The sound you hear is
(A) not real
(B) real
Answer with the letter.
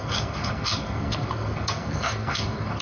A